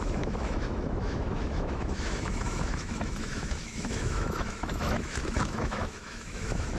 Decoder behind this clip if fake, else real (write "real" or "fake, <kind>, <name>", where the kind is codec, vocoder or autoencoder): fake, autoencoder, DAC-VAE